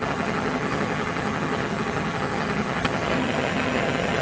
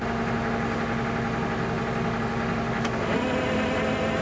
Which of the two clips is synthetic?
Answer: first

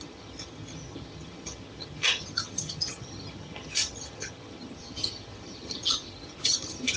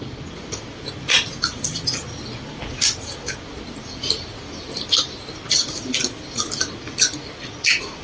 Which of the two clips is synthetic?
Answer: first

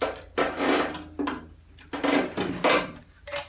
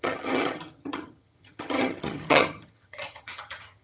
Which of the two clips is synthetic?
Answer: second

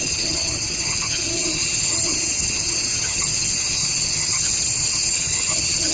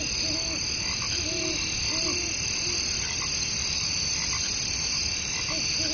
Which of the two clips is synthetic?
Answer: first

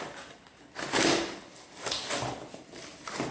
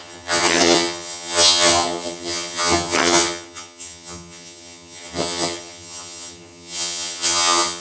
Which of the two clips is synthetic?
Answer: second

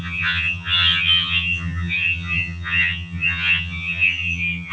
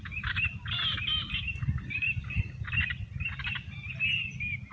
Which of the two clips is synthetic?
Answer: first